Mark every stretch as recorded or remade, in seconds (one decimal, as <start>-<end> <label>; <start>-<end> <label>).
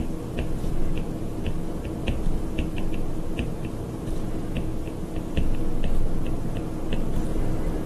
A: 0.0-7.3 recorded; 7.3-7.9 remade